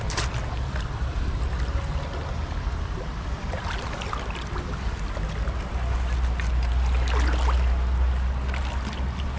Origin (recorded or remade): recorded